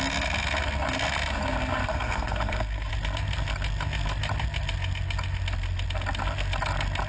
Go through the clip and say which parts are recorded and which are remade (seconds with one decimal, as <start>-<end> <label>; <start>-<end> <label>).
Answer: 0.0-1.9 recorded; 1.9-2.9 remade; 2.9-7.1 recorded